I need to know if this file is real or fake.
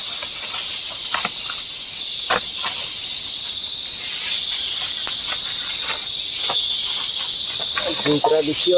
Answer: real